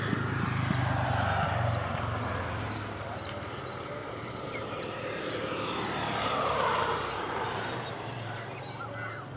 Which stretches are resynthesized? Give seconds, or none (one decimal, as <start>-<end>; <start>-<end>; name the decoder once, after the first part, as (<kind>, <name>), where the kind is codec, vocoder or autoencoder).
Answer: 4.0-4.8 (vocoder, BigVGAN v2); 6.8-8.6